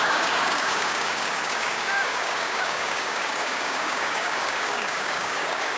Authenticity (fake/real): fake